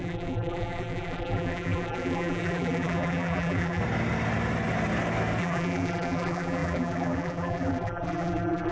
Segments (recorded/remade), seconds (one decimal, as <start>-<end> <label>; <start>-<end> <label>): 0.0-3.8 remade; 3.8-5.4 recorded; 5.4-8.7 remade